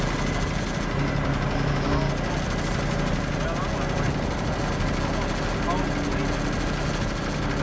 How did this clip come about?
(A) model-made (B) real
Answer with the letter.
B